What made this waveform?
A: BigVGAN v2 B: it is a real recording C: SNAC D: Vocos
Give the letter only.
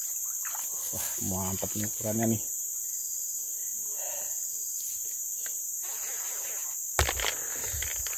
B